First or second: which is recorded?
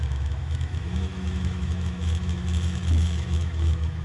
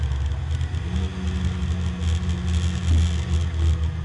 second